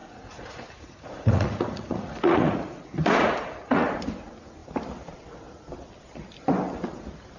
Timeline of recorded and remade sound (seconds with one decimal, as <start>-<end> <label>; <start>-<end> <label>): 0.0-4.0 remade; 4.0-7.4 recorded